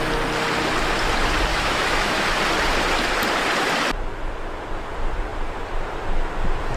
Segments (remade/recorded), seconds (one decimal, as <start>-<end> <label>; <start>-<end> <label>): 0.0-1.5 recorded; 1.5-2.4 remade; 2.4-6.8 recorded